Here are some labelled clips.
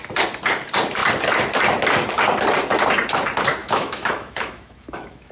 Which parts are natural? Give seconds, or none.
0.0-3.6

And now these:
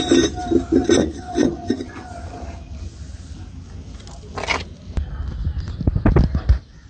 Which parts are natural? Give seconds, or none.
0.0-1.0; 2.1-6.9

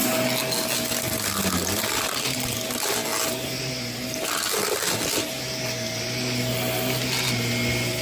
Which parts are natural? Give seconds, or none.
0.0-8.0

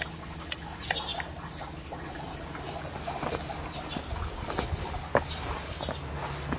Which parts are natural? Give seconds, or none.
0.0-6.6